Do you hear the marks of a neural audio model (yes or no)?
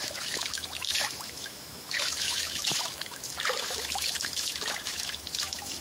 yes